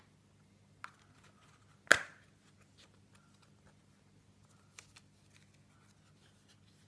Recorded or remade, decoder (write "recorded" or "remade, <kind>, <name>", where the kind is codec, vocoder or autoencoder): recorded